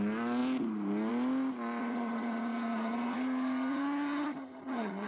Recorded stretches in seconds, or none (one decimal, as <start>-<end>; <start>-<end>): 0.0-1.8